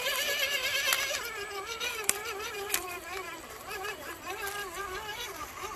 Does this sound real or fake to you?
fake